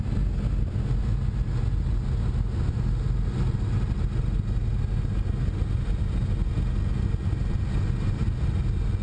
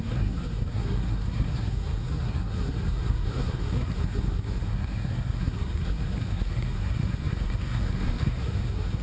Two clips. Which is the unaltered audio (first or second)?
first